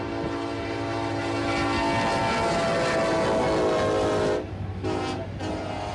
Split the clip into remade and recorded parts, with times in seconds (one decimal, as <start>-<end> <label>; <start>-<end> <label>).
0.0-5.9 recorded